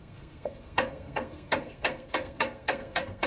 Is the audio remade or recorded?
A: remade